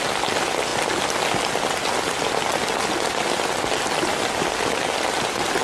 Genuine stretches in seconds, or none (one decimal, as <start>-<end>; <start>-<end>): 0.0-5.6